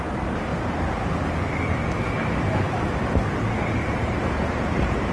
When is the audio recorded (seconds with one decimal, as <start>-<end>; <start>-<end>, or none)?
0.0-5.1